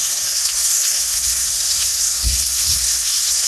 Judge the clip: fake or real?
fake